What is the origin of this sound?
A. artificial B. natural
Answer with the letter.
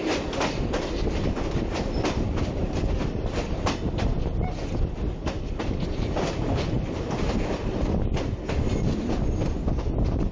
B